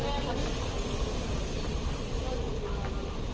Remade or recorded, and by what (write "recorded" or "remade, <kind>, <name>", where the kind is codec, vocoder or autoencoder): recorded